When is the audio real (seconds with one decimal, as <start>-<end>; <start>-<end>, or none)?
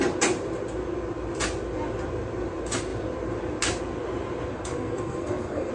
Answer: 0.0-4.5